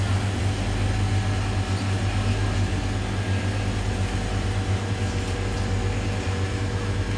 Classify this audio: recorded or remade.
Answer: recorded